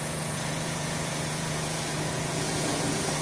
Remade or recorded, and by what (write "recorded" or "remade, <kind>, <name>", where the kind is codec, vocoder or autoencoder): remade, vocoder, Vocos